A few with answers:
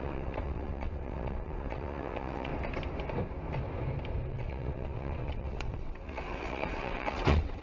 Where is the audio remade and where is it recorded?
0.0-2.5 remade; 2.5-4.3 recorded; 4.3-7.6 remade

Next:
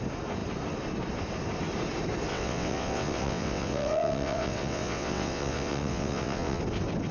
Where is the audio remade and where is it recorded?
0.0-2.3 recorded; 2.3-6.6 remade; 6.6-7.1 recorded

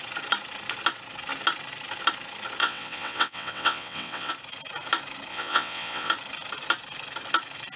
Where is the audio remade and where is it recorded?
0.0-2.6 recorded; 2.6-4.3 remade; 4.3-5.3 recorded; 5.3-6.1 remade; 6.1-7.8 recorded

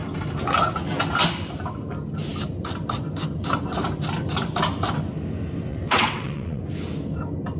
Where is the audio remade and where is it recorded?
0.0-5.7 recorded; 5.7-6.6 remade; 6.6-7.6 recorded

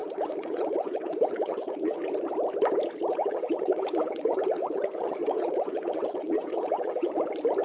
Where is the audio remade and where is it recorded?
0.0-2.0 remade; 2.0-3.1 recorded; 3.1-7.1 remade; 7.1-7.6 recorded

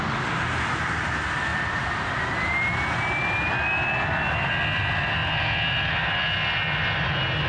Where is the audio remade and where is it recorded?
0.0-7.5 recorded

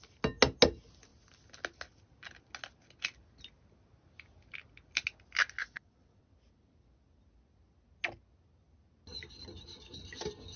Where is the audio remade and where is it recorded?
0.0-5.6 recorded; 5.6-6.2 remade; 6.2-10.6 recorded

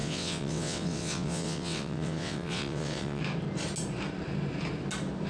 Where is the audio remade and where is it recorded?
0.0-3.2 remade; 3.2-5.3 recorded